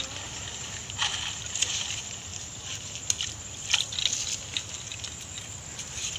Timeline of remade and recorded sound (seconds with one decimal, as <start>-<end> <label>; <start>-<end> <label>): 0.0-6.2 recorded